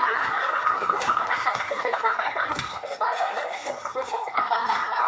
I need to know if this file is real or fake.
fake